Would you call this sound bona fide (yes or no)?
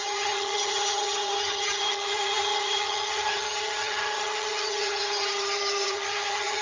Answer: no